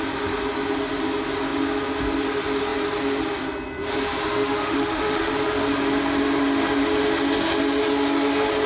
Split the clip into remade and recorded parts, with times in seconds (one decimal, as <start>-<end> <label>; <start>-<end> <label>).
0.0-4.3 recorded; 4.3-5.3 remade; 5.3-8.7 recorded